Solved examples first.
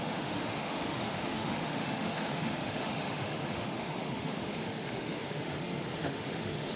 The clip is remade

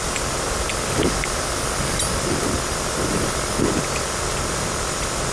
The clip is recorded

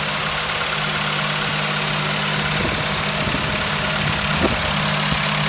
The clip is recorded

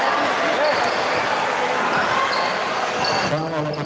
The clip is recorded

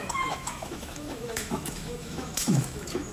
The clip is remade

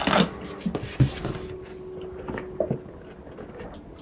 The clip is recorded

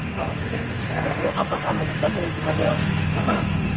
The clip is remade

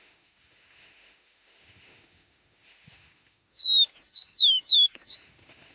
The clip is remade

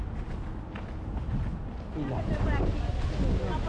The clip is recorded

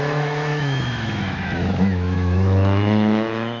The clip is remade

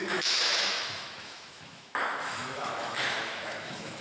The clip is remade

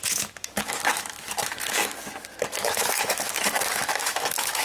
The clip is remade